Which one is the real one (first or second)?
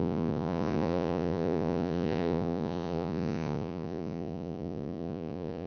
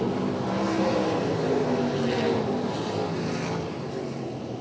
second